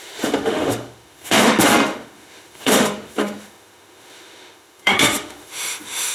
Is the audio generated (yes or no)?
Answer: yes